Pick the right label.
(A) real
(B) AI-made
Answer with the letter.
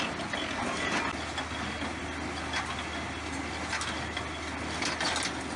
A